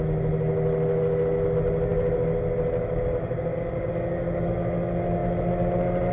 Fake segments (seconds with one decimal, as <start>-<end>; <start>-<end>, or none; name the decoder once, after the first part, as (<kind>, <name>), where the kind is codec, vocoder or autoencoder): none